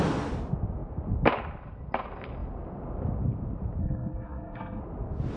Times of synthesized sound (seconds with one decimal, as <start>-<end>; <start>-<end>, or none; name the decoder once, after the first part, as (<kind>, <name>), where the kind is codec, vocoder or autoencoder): 3.8-4.8 (codec, SNAC)